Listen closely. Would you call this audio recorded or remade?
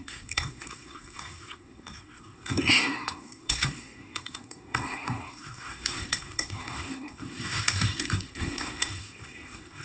remade